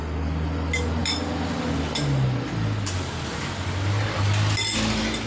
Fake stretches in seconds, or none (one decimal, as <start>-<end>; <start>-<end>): none